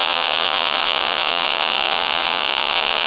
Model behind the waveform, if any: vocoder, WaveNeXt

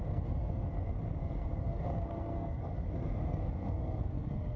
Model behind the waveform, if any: codec, SNAC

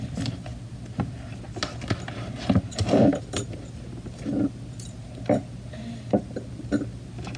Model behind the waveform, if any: none